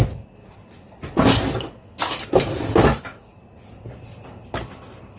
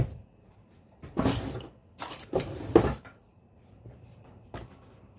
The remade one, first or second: second